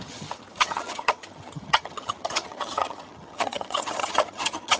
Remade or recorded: remade